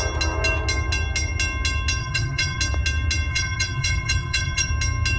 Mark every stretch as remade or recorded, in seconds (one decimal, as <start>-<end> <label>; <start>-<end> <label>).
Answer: 0.0-2.0 recorded; 2.0-2.6 remade; 2.6-3.3 recorded; 3.3-4.7 remade; 4.7-5.2 recorded